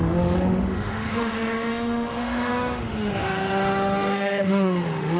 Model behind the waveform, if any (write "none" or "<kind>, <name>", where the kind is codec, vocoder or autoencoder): autoencoder, DAC-VAE